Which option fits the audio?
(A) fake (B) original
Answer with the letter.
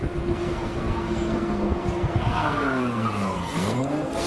A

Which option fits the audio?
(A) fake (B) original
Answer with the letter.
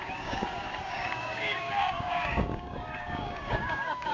A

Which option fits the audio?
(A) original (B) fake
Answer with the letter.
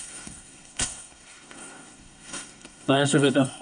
B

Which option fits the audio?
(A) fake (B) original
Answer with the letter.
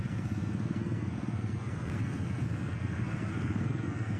A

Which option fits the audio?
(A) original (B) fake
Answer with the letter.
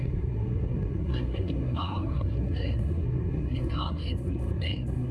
B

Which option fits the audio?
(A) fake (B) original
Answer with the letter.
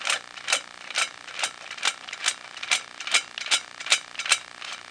B